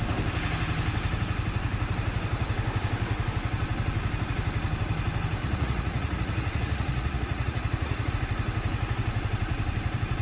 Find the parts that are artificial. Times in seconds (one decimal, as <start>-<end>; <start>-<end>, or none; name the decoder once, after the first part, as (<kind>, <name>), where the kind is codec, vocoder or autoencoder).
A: 5.4-8.1 (vocoder, Vocos)